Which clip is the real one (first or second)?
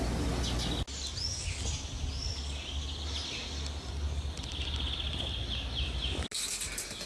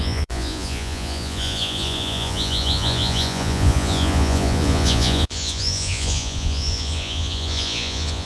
first